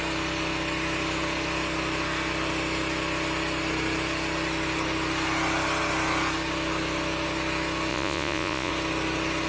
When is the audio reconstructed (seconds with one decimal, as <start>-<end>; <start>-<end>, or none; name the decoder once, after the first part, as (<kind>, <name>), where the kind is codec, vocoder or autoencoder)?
7.9-8.7 (vocoder, Vocos)